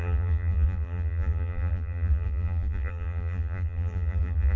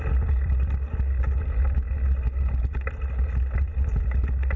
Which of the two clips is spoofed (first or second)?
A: first